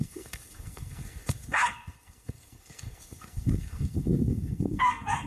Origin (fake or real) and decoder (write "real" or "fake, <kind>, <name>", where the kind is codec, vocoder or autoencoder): fake, codec, SNAC